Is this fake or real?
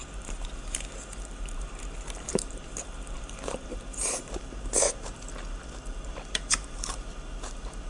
fake